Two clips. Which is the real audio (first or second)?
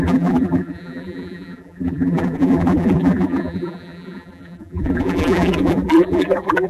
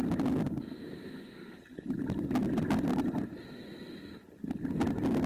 second